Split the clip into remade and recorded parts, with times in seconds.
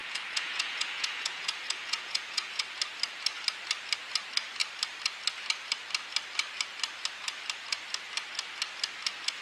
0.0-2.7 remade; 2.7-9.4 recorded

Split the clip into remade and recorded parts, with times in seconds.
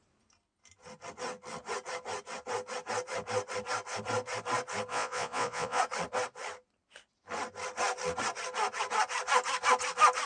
0.0-4.9 recorded; 4.9-5.8 remade; 5.8-10.3 recorded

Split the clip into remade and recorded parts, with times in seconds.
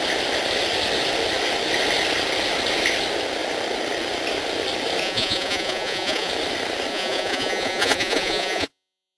0.0-5.0 recorded; 5.0-6.3 remade; 6.3-6.9 recorded; 6.9-9.2 remade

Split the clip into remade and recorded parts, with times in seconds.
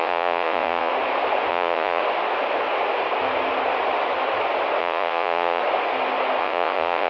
0.0-0.9 remade; 0.9-1.5 recorded; 1.5-2.0 remade; 2.0-4.8 recorded; 4.8-5.6 remade; 5.6-6.4 recorded; 6.4-7.1 remade